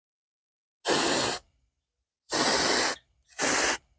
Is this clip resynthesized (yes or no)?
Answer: no